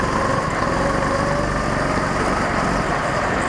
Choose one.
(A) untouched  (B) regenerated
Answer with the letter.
A